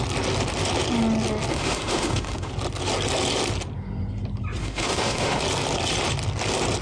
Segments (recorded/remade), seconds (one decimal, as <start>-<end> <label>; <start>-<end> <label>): 0.0-1.5 recorded; 1.5-2.5 remade; 2.5-4.6 recorded; 4.6-5.4 remade; 5.4-6.8 recorded